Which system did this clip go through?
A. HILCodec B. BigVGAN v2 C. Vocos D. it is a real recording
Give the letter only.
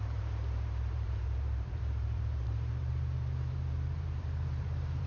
B